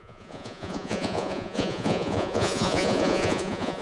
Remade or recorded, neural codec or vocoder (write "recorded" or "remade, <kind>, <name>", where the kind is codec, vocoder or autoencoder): remade, vocoder, Vocos